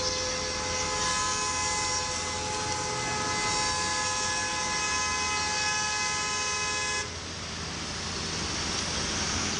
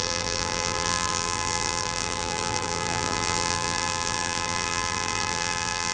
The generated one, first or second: second